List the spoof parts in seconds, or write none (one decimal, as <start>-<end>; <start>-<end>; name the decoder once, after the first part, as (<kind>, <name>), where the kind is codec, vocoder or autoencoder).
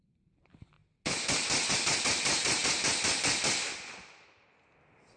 none